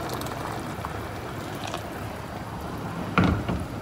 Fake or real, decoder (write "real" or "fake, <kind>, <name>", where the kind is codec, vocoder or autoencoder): real